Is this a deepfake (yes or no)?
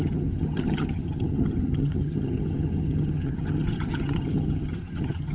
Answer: yes